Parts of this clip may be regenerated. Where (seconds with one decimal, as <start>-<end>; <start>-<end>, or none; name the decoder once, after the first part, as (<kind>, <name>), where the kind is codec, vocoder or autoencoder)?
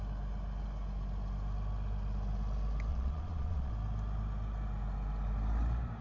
2.9-3.7 (vocoder, Vocos)